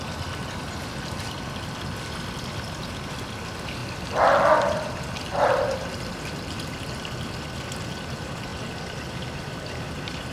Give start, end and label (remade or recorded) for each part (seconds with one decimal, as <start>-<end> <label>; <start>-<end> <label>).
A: 0.0-10.3 recorded